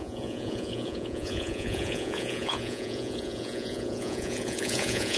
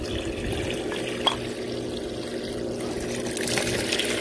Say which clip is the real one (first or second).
second